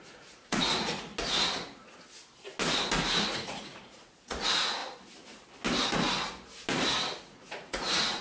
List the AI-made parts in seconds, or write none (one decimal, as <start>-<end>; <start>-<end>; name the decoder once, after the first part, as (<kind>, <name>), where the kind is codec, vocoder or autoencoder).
0.0-1.1 (vocoder, Vocos); 3.2-4.8; 7.2-8.2